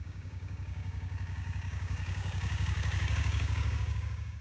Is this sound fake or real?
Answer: fake